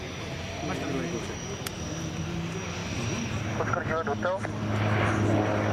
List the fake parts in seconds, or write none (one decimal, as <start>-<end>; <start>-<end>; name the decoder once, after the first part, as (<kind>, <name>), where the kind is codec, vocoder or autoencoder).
none